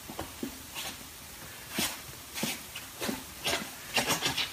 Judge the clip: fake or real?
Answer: real